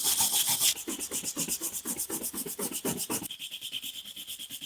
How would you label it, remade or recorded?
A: remade